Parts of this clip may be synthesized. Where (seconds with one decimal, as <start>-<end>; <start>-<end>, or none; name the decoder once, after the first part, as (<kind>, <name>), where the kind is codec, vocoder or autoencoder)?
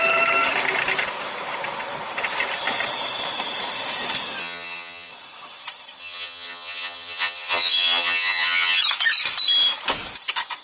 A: 4.4-5.1 (vocoder, HiFi-GAN); 6.0-8.8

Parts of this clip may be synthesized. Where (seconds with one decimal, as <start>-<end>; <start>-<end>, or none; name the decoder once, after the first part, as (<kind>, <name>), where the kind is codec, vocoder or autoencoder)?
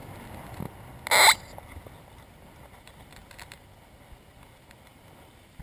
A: 4.9-5.6 (vocoder, BigVGAN v2)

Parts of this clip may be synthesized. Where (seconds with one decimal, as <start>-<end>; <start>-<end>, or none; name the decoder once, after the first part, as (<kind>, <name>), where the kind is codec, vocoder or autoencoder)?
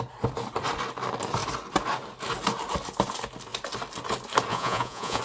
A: 4.5-5.2 (vocoder, Vocos)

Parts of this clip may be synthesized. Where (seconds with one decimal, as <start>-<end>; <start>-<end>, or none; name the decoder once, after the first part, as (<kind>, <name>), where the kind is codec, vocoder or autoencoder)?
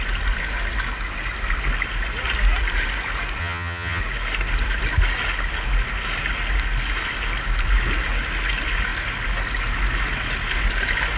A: 3.4-4.0 (vocoder, HiFi-GAN)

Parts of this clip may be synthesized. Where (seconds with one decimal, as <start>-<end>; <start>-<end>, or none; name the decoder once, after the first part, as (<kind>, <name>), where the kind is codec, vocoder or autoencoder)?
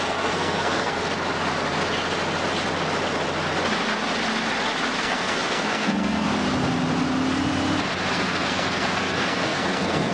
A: 0.0-1.0 (codec, SNAC); 5.0-6.3; 8.1-10.1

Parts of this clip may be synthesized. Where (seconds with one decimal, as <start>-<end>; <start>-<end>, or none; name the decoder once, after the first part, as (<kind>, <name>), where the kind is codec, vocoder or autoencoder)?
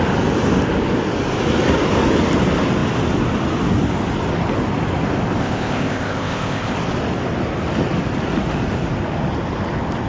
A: 5.4-6.7 (codec, ZipCodec)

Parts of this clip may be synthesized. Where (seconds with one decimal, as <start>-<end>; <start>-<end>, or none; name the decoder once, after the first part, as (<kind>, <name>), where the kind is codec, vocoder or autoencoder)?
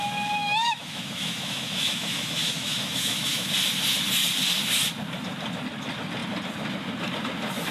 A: 0.4-3.5 (autoencoder, DAC-VAE)